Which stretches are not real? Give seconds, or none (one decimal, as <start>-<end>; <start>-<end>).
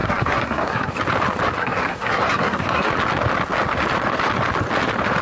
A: 0.0-0.9; 1.6-2.9